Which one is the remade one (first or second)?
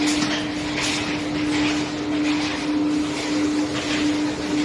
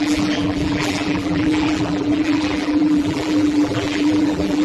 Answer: second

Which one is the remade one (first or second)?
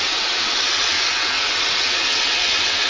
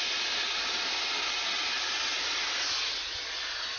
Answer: first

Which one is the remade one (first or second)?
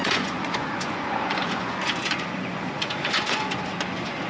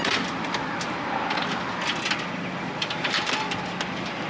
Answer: first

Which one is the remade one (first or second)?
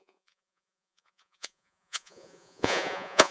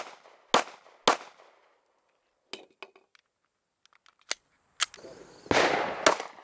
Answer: first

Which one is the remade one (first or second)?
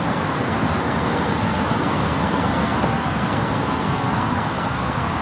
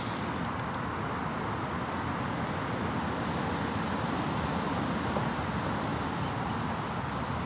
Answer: first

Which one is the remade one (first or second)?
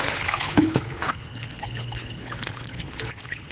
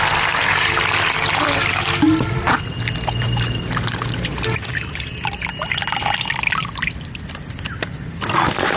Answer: first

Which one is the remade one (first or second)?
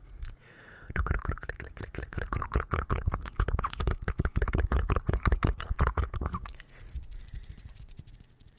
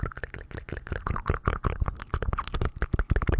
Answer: first